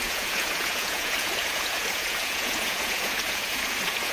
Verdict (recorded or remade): remade